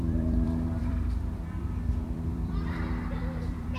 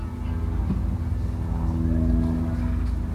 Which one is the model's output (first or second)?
first